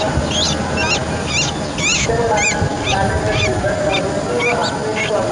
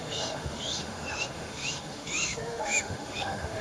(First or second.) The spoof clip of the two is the second